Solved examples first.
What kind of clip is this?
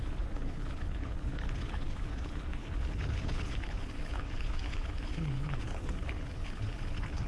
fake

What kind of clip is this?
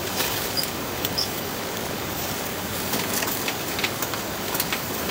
fake